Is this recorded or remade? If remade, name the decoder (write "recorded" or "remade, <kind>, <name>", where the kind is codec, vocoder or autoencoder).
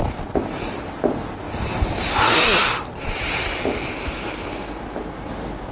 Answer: recorded